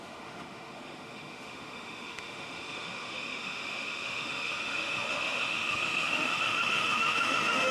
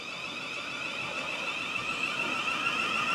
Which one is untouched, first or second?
second